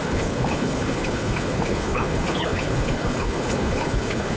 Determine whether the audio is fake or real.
fake